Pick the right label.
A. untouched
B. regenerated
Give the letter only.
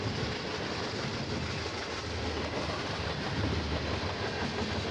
A